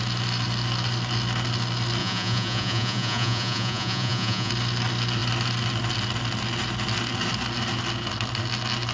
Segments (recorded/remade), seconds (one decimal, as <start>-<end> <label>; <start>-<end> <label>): 0.0-2.0 recorded; 2.0-4.5 remade; 4.5-8.9 recorded